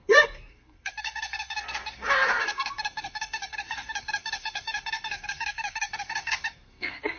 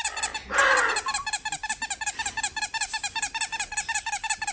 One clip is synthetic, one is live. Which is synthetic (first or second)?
first